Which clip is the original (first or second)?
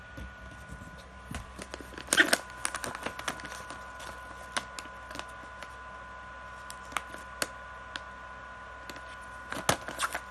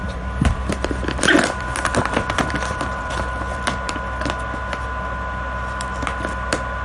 first